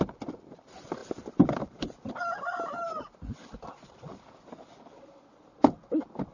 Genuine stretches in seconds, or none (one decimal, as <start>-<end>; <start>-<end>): 0.0-6.3